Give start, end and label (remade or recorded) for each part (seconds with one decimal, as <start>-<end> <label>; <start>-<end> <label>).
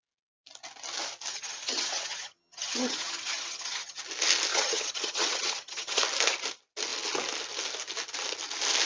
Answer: 0.0-1.3 recorded; 1.3-4.0 remade; 4.0-4.5 recorded; 4.5-6.0 remade; 6.0-8.9 recorded